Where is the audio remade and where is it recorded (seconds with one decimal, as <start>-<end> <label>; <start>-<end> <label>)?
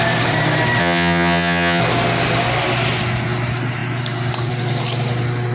0.0-0.8 recorded; 0.8-1.8 remade; 1.8-5.5 recorded